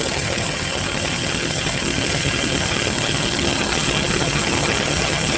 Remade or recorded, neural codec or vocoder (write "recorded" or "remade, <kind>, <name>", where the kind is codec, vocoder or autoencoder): remade, vocoder, HiFi-GAN